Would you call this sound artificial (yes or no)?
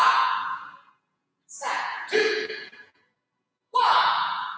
yes